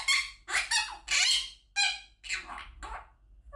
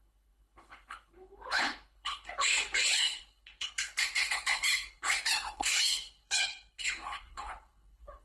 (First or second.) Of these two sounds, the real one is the first